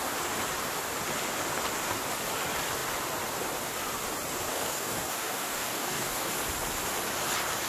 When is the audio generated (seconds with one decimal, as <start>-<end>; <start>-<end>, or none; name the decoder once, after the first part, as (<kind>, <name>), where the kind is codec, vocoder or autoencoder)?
4.5-6.3 (codec, DAC)